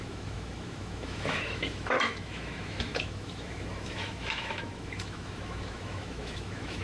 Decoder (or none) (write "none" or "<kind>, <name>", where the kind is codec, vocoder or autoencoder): autoencoder, DAC-VAE